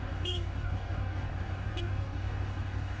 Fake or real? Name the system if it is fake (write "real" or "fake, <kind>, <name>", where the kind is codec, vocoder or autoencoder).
fake, codec, DAC